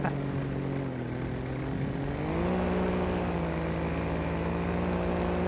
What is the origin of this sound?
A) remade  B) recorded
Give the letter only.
B